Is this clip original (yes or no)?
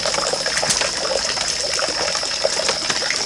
yes